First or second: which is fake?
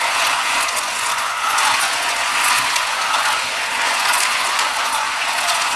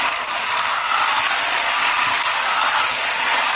first